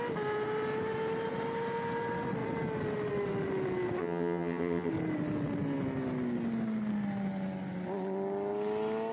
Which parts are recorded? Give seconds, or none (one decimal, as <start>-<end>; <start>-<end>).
0.0-4.0; 4.9-9.1